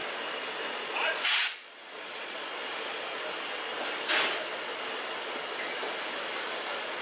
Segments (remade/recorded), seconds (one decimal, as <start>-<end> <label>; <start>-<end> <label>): 0.0-0.7 recorded; 0.7-2.5 remade; 2.5-6.6 recorded; 6.6-7.0 remade

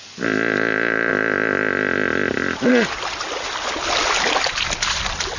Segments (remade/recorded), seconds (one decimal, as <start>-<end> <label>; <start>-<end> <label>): 0.0-5.4 recorded

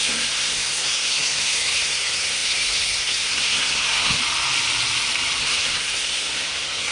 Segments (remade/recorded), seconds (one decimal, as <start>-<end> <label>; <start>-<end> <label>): 0.0-4.2 remade; 4.2-5.4 recorded; 5.4-6.9 remade

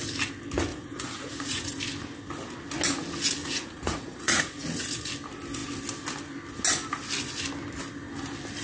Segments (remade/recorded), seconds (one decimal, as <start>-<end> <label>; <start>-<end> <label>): 0.0-0.7 recorded; 0.7-1.8 remade; 1.8-3.4 recorded; 3.4-5.1 remade; 5.1-8.6 recorded

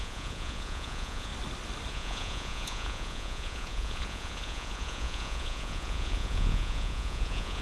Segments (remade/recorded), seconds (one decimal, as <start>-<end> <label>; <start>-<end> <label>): 0.0-1.3 remade; 1.3-1.9 recorded; 1.9-7.6 remade